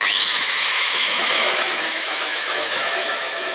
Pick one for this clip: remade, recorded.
remade